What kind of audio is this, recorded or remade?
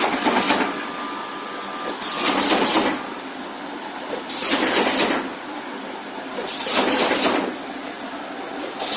recorded